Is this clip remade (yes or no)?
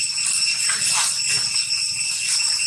no